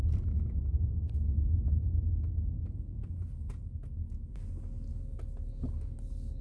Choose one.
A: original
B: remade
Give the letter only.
A